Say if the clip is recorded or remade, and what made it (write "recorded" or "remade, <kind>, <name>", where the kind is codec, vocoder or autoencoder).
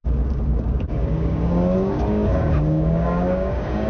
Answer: remade, codec, DAC